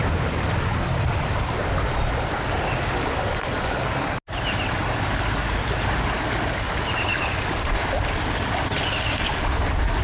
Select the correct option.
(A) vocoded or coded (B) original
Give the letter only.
B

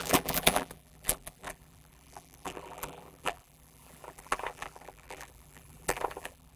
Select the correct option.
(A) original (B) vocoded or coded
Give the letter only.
B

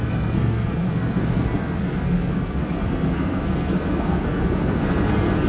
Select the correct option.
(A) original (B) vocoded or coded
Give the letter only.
B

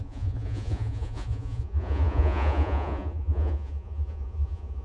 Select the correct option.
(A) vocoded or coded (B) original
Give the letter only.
A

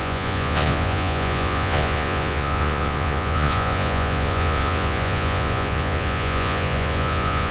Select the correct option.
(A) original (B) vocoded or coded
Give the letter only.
B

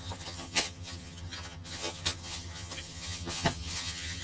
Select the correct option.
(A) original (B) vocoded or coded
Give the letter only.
B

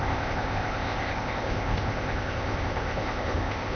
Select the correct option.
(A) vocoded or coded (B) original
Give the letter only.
A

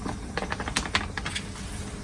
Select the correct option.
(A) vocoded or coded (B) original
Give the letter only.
B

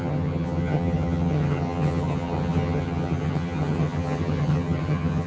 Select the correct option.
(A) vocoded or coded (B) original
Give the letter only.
A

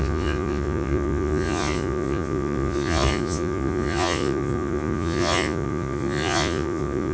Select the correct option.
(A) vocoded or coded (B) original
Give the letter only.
A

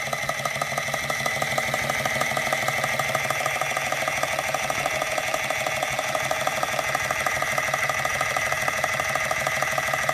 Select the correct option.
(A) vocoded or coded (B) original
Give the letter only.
B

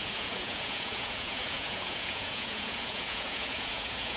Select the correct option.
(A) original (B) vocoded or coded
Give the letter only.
B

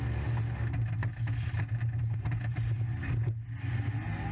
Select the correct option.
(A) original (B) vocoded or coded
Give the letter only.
A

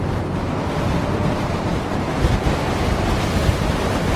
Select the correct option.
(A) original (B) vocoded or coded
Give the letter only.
A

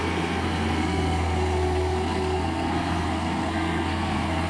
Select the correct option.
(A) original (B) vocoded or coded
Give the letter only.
B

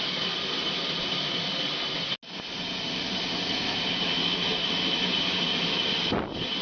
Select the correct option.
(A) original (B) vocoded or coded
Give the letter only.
A